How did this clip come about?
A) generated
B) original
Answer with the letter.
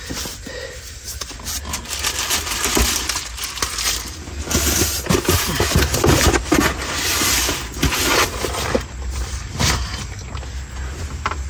B